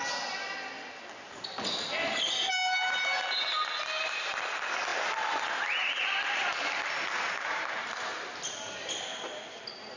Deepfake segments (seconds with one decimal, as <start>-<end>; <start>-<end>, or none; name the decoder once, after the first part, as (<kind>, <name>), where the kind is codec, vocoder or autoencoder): none